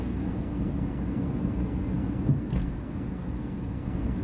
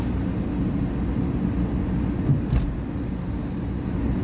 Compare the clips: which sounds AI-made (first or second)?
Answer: first